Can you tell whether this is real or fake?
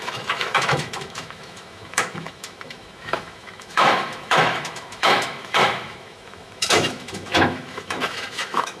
fake